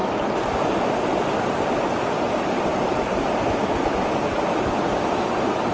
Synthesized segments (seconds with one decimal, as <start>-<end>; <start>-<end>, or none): none